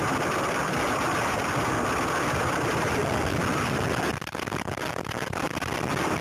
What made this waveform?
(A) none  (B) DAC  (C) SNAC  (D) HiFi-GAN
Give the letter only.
A